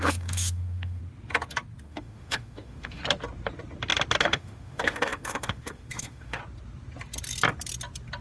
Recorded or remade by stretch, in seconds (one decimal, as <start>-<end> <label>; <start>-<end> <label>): 0.0-1.0 remade; 1.0-1.8 recorded; 1.8-3.0 remade; 3.0-4.2 recorded; 4.2-6.4 remade; 6.4-8.2 recorded